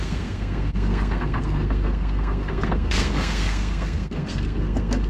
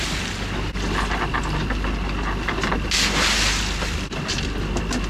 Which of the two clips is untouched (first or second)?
second